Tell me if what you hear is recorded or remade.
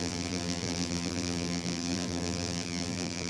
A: remade